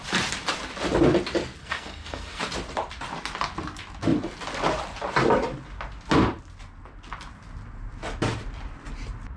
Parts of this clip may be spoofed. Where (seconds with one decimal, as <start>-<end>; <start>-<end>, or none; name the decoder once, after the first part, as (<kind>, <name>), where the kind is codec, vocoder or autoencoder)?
1.6-2.4 (codec, SNAC)